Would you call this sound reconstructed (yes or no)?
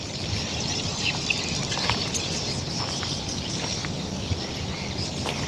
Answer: yes